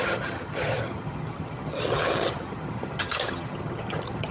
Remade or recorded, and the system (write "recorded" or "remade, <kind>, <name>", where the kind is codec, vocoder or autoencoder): remade, vocoder, HiFi-GAN